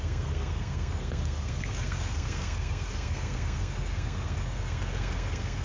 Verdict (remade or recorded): remade